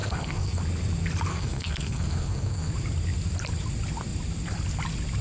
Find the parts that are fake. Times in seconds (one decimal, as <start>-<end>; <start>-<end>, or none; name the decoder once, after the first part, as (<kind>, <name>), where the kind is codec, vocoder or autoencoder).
0.0-0.6 (codec, SNAC); 1.3-2.7